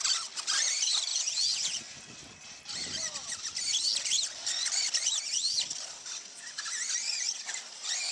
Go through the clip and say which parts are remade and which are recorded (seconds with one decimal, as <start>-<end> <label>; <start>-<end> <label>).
0.0-1.1 recorded; 1.1-1.8 remade; 1.8-8.1 recorded